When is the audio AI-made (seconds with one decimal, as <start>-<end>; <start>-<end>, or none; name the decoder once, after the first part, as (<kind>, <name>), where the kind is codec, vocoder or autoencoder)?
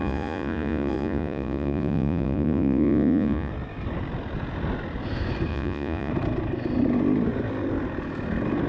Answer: 0.0-3.5 (vocoder, Vocos); 5.5-6.1